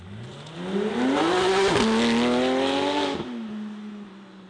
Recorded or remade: recorded